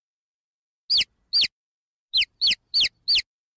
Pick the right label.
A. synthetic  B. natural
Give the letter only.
B